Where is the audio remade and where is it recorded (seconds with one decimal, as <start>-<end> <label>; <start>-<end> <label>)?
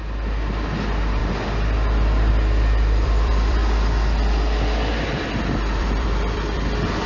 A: 0.0-1.2 remade; 1.2-2.3 recorded; 2.3-3.6 remade; 3.6-5.8 recorded; 5.8-7.1 remade